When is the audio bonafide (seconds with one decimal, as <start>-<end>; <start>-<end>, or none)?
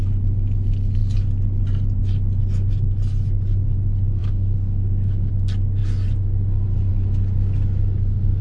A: 0.0-4.2; 5.3-8.4